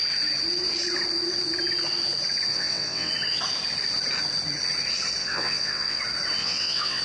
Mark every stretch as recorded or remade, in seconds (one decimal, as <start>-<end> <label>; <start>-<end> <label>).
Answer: 0.0-2.5 recorded; 2.5-3.1 remade; 3.1-5.2 recorded; 5.2-6.0 remade; 6.0-6.4 recorded; 6.4-7.0 remade

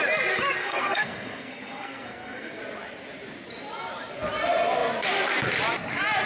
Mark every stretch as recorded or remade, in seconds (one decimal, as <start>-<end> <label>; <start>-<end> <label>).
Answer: 0.0-0.6 recorded; 0.6-2.6 remade; 2.6-6.3 recorded